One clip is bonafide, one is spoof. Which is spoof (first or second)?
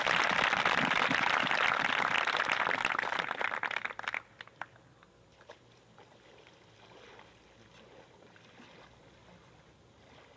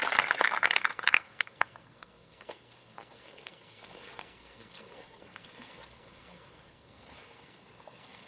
second